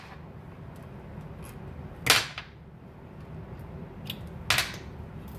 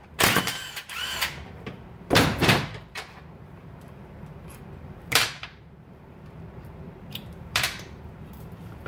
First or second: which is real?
first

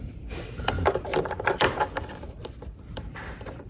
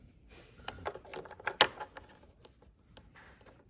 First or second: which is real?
second